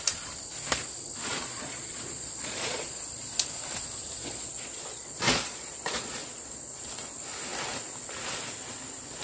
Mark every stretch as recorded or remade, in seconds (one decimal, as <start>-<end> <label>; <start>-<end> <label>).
0.0-1.3 recorded; 1.3-3.2 remade; 3.2-4.2 recorded; 4.2-6.8 remade; 6.8-9.2 recorded